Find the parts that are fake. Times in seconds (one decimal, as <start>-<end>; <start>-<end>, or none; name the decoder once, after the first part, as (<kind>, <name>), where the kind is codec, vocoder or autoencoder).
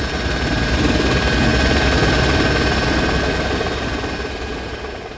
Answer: none